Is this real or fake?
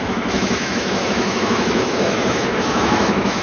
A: fake